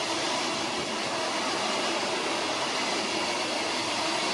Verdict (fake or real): real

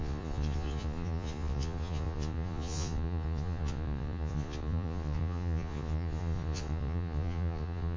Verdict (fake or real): fake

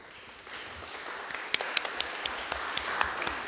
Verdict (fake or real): real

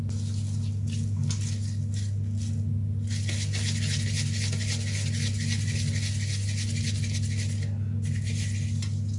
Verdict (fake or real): real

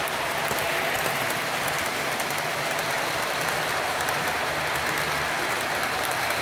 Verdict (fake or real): real